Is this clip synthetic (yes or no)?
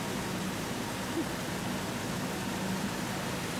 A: no